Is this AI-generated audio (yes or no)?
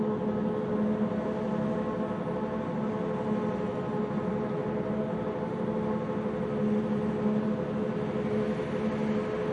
no